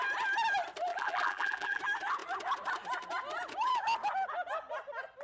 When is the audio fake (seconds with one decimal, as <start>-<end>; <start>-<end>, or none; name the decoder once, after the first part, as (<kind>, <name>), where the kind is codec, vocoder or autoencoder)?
0.9-1.8 (vocoder, BigVGAN v2)